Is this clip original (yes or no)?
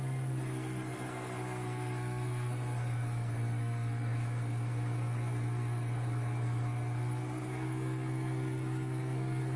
no